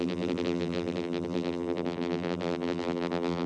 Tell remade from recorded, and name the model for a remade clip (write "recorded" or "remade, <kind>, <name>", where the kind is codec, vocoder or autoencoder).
remade, vocoder, BigVGAN v2